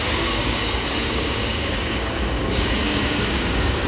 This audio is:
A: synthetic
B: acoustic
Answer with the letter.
A